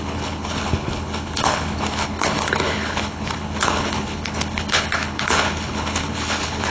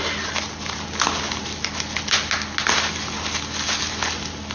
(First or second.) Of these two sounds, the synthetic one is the first